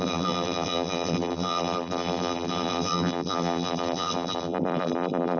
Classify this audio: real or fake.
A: fake